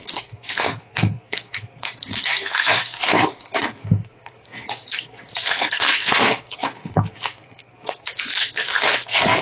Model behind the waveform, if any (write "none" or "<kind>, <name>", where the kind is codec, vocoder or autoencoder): codec, SNAC